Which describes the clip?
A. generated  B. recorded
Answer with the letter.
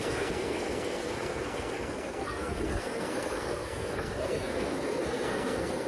A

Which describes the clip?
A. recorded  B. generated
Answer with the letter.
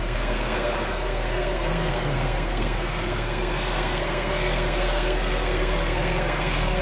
B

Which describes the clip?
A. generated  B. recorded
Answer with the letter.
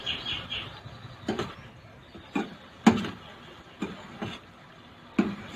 B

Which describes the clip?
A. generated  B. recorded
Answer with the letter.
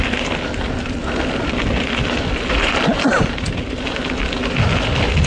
B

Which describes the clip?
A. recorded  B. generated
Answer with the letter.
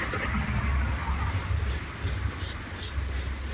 A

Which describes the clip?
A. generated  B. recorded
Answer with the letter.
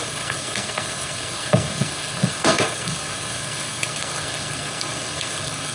A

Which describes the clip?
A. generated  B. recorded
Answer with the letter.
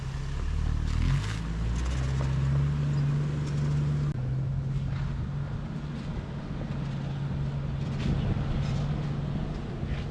B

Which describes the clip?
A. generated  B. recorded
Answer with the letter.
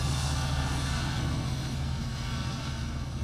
A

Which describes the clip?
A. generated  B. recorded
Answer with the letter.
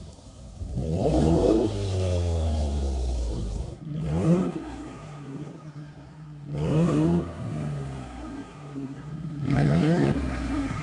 A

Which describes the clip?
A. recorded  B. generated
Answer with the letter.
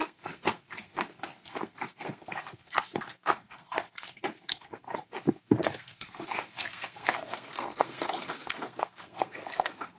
B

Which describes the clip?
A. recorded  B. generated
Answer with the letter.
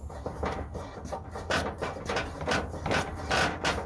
A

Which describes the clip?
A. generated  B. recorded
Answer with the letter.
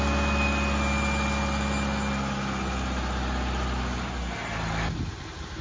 B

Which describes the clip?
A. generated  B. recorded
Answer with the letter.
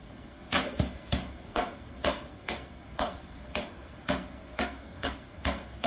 A